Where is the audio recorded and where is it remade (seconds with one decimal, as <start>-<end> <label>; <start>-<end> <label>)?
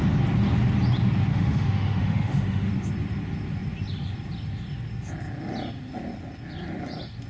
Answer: 0.0-1.3 recorded; 1.3-2.7 remade; 2.7-7.3 recorded